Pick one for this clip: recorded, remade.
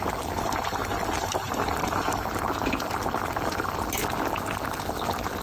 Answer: recorded